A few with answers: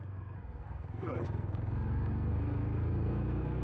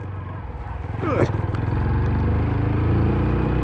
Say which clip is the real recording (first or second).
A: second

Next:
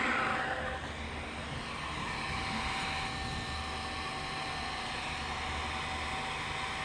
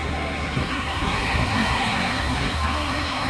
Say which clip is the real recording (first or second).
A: first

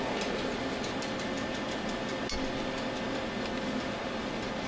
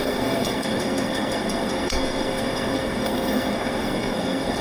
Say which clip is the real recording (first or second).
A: first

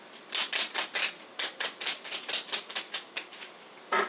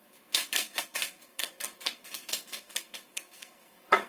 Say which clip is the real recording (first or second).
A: first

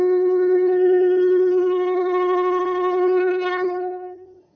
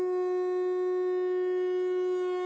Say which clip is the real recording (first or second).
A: second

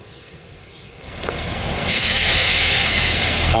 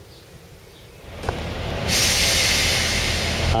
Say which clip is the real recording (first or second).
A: second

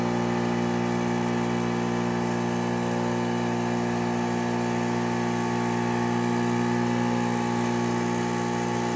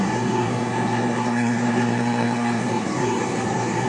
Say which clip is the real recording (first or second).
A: first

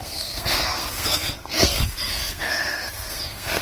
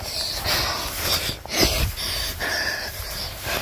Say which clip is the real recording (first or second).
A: second